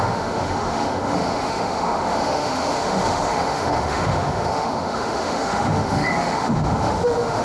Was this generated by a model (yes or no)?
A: yes